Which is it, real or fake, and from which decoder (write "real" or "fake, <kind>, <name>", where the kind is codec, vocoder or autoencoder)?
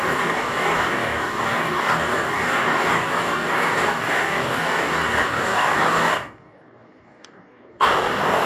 fake, codec, DAC